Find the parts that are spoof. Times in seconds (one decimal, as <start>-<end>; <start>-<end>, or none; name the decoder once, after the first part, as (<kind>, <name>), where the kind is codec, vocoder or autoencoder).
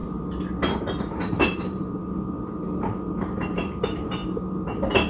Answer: 1.0-2.0 (vocoder, BigVGAN v2); 3.1-4.2